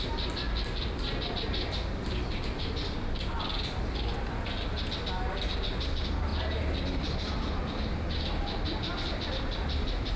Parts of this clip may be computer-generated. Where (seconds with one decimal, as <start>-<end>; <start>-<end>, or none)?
none